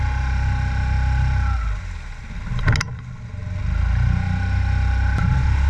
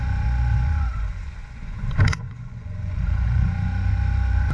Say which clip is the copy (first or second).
second